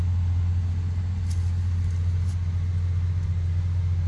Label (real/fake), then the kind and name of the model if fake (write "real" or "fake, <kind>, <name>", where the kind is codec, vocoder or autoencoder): real